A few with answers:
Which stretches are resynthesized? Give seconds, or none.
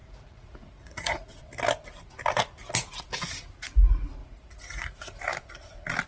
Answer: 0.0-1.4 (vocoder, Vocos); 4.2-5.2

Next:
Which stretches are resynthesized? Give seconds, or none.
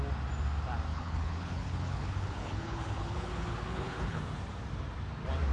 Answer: 0.9-4.2 (codec, HILCodec)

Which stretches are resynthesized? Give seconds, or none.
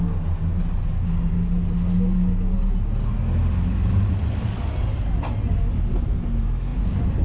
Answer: 3.4-5.0 (vocoder, BigVGAN v2); 6.7-7.2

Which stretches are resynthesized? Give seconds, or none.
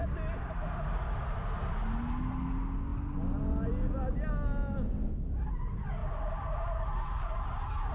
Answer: none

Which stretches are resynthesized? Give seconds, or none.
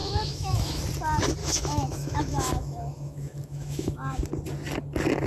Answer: 0.0-0.8 (autoencoder, DAC-VAE); 1.4-4.2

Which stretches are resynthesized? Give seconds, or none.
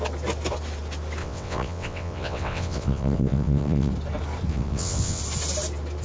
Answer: 1.2-3.9 (vocoder, WaveNeXt); 4.5-5.2